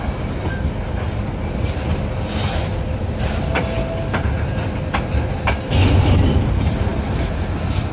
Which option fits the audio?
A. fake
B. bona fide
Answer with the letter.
B